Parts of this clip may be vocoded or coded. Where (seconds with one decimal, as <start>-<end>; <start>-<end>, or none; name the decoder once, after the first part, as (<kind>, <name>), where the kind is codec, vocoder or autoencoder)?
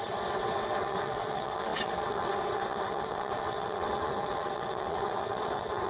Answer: 0.0-5.9 (vocoder, WaveNeXt)